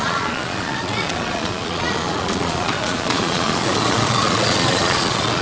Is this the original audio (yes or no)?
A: no